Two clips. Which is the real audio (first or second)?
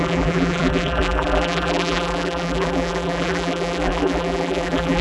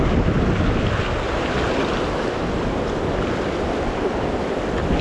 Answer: second